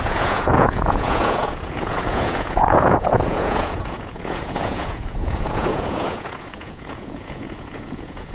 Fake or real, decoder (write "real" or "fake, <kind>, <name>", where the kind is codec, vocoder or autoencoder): fake, vocoder, Vocos